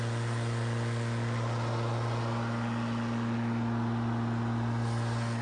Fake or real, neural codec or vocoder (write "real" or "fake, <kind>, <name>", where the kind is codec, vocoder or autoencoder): real